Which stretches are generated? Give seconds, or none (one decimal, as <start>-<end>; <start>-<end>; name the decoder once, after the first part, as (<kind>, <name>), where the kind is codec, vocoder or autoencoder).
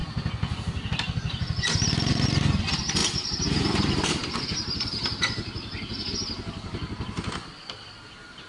3.0-6.1 (vocoder, BigVGAN v2)